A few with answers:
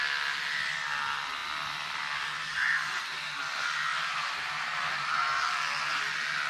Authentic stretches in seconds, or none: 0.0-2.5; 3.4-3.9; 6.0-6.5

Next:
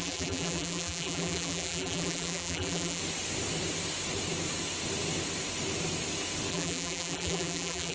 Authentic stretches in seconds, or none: 3.0-6.5

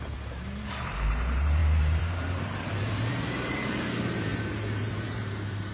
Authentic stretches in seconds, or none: none

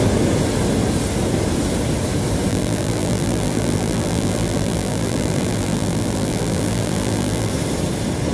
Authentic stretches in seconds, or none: 0.0-2.5; 7.5-8.3

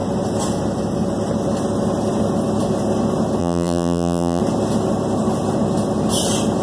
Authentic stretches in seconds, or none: 0.0-3.4; 4.4-6.6

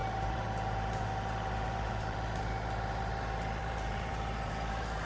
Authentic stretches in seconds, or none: 2.4-3.6